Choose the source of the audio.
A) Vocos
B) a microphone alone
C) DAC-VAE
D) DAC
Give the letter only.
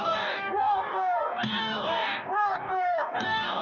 D